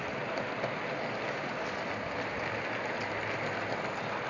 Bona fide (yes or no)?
yes